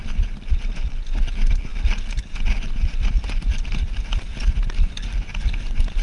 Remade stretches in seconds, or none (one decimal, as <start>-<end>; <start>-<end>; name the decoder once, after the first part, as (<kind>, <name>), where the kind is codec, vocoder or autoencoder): none